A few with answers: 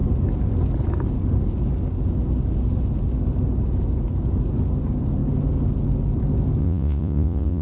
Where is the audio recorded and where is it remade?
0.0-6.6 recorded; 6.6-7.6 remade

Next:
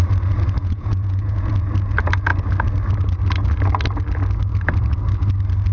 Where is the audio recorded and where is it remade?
0.0-0.6 recorded; 0.6-1.5 remade; 1.5-5.7 recorded

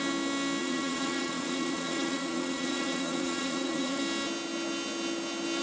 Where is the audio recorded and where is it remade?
0.0-0.6 recorded; 0.6-4.0 remade; 4.0-5.6 recorded

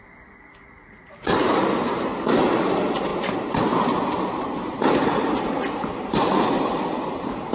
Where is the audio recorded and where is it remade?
0.0-0.8 recorded; 0.8-2.0 remade; 2.0-7.5 recorded

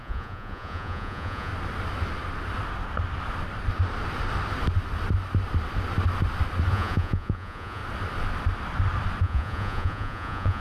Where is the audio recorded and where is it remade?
0.0-1.5 remade; 1.5-6.7 recorded; 6.7-7.8 remade; 7.8-9.2 recorded; 9.2-10.6 remade

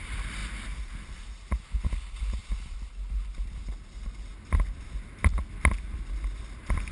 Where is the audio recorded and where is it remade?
0.0-6.9 recorded

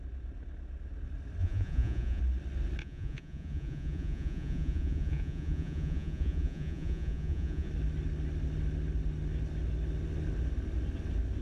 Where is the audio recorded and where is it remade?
0.0-1.4 recorded; 1.4-2.2 remade; 2.2-2.8 recorded; 2.8-7.7 remade; 7.7-11.4 recorded

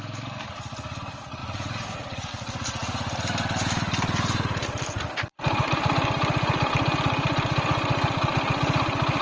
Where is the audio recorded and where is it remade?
0.0-1.4 recorded; 1.4-2.3 remade; 2.3-9.2 recorded